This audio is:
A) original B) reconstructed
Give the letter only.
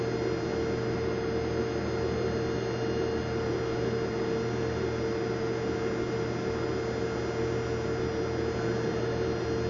A